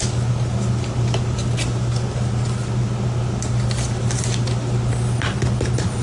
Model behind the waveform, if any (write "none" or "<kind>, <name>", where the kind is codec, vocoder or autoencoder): none